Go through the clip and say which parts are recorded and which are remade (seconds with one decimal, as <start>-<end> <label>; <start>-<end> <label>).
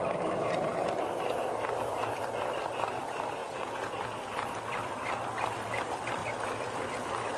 0.0-3.4 recorded; 3.4-3.9 remade; 3.9-7.4 recorded